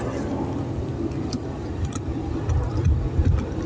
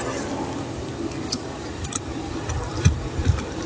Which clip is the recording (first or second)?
first